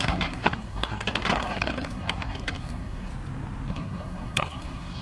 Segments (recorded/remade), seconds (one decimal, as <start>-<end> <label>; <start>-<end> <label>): 0.0-3.1 remade; 3.1-3.7 recorded; 3.7-5.0 remade